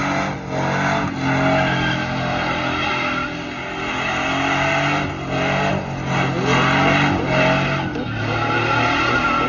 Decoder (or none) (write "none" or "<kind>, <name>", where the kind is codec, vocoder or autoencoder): none